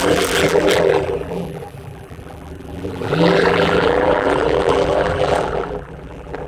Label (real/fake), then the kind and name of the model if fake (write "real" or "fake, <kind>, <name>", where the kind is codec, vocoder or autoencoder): fake, vocoder, BigVGAN v2